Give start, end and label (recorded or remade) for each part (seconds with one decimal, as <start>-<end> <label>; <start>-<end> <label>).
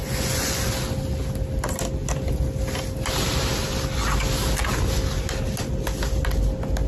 0.0-0.7 remade; 0.7-6.9 recorded